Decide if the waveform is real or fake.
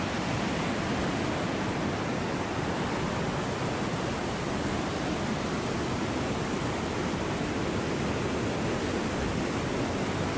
real